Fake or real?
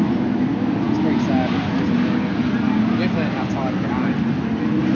real